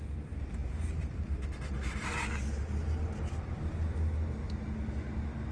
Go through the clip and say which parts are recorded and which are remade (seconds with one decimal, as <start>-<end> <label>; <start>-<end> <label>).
0.0-2.1 remade; 2.1-4.4 recorded; 4.4-5.5 remade